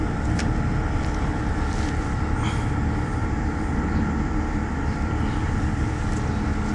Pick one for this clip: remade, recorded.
recorded